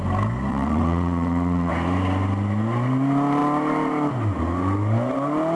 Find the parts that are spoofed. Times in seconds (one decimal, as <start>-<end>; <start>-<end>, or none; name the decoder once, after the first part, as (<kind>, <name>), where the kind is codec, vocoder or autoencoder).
0.5-1.7 (vocoder, WaveNeXt)